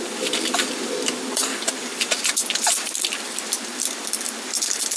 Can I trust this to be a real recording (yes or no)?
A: no